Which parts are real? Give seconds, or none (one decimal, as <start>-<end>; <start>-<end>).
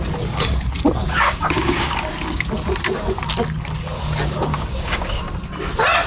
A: 0.0-1.0; 2.0-4.5; 5.2-6.1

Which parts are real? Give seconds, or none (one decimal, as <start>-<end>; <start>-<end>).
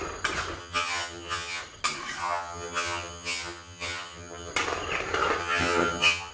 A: 0.0-0.6; 1.6-2.2; 4.5-5.4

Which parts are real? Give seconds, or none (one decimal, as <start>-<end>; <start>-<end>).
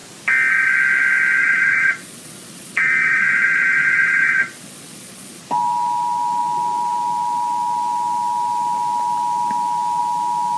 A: 0.0-1.4; 5.4-10.6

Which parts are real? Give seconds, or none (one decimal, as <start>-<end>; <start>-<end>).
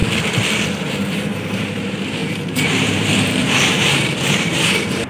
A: 0.0-0.8